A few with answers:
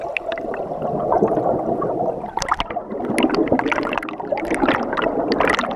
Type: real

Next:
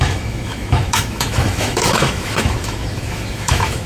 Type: fake